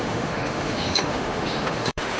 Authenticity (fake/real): fake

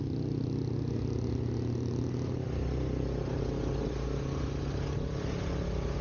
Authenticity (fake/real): real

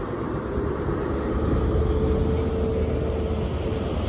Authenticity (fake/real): real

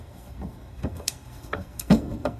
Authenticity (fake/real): fake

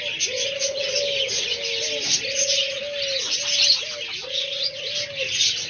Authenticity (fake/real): real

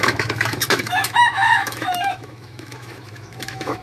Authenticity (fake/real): fake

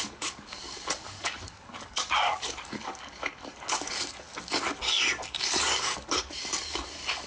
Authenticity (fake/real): fake